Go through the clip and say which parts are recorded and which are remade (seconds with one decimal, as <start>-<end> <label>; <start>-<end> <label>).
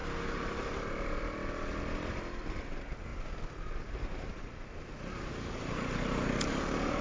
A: 0.0-7.0 recorded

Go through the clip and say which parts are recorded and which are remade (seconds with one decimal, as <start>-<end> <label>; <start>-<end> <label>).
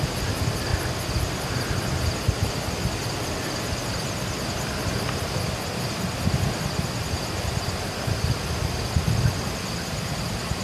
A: 0.0-10.6 recorded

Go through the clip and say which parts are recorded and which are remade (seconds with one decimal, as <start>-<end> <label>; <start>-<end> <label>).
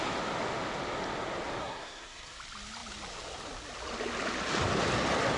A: 0.0-1.6 recorded; 1.6-2.4 remade; 2.4-5.4 recorded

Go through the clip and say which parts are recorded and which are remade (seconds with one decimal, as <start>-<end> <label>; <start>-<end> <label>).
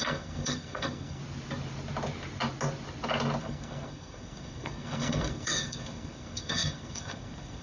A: 0.0-1.2 remade; 1.2-3.4 recorded; 3.4-7.6 remade